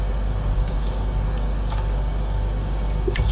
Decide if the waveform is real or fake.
fake